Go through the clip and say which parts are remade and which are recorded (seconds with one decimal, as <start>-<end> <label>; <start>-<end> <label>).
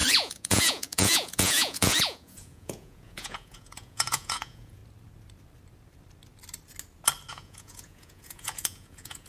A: 0.0-4.8 remade; 4.8-7.3 recorded; 7.3-9.3 remade